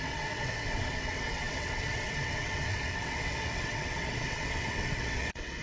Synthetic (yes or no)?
yes